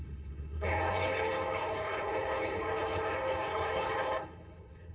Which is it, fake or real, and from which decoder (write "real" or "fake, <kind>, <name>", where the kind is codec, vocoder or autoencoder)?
fake, codec, HILCodec